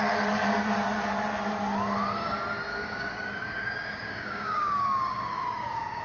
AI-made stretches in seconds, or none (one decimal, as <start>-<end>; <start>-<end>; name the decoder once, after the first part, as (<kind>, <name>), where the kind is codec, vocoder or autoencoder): 2.7-6.0 (codec, DAC)